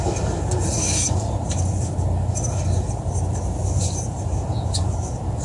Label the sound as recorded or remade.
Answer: recorded